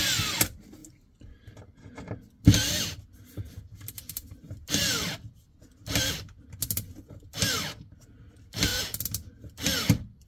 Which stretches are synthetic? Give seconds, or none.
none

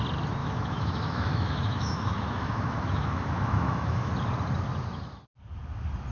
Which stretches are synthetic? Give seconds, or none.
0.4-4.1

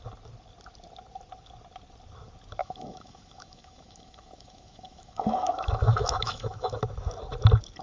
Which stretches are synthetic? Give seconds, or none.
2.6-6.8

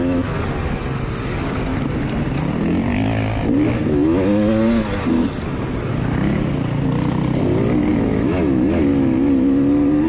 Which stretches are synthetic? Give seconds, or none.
7.9-8.8

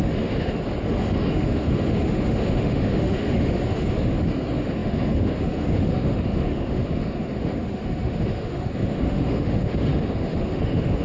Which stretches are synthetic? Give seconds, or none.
0.0-0.5; 1.0-11.0